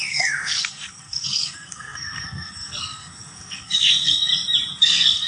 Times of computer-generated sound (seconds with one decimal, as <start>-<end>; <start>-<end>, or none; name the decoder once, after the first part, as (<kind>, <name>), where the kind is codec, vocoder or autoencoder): 0.0-4.3 (codec, SNAC); 4.8-5.3